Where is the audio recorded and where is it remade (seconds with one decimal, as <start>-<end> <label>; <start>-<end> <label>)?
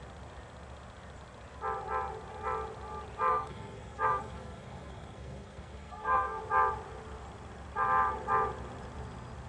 0.0-3.3 recorded; 3.3-6.4 remade; 6.4-9.5 recorded